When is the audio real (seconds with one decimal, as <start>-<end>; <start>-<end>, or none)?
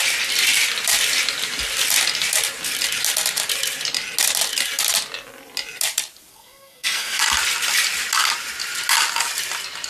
0.0-6.3; 7.2-9.9